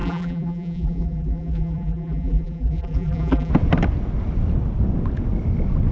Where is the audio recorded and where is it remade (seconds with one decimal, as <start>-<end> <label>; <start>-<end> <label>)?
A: 0.0-3.5 remade; 3.5-5.9 recorded

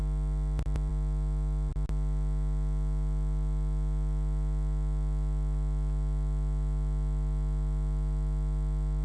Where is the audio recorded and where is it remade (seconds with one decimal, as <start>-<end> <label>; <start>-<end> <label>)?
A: 0.0-9.0 recorded

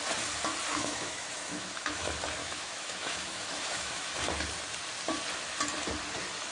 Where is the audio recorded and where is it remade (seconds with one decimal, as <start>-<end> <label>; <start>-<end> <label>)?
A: 0.0-0.7 recorded; 0.7-2.0 remade; 2.0-2.4 recorded; 2.4-4.1 remade; 4.1-6.5 recorded